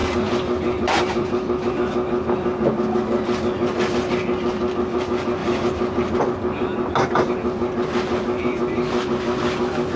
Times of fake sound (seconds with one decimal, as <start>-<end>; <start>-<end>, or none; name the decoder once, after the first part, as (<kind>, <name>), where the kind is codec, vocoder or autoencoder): 0.0-1.7 (vocoder, BigVGAN v2); 5.4-6.2